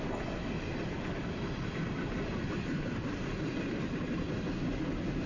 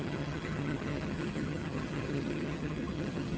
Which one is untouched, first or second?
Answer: first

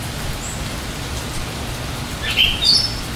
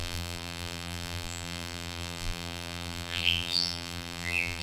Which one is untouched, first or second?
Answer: first